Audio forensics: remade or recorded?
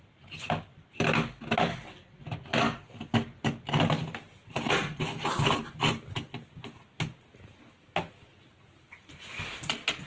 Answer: recorded